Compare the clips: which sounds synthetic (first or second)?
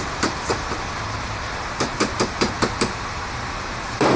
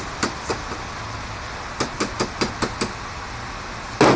first